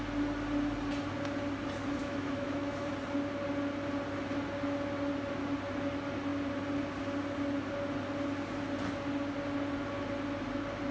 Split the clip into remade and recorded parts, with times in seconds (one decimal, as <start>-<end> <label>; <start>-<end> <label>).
0.0-2.0 recorded; 2.0-2.9 remade; 2.9-10.9 recorded